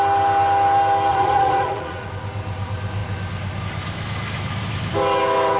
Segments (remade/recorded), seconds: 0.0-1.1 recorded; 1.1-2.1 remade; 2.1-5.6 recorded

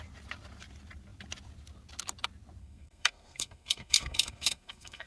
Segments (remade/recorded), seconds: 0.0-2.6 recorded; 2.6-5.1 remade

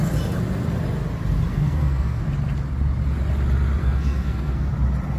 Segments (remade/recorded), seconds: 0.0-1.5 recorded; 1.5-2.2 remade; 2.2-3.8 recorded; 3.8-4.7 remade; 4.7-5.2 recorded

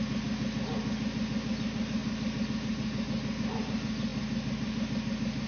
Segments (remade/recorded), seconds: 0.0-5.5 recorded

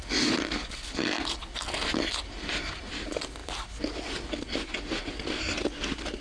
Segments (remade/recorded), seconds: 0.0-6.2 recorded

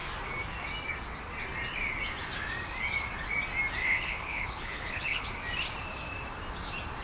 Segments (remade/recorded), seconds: 0.0-3.8 recorded; 3.8-5.3 remade; 5.3-7.0 recorded